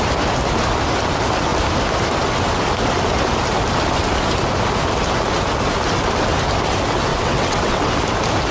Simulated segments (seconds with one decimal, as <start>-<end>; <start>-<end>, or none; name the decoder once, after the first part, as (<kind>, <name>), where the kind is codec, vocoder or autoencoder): 7.1-7.9 (vocoder, WaveNeXt)